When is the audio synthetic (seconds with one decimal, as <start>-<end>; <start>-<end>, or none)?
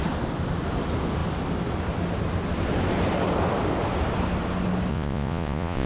4.9-5.9